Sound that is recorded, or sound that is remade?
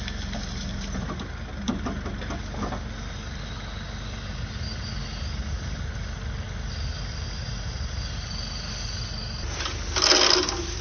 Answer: recorded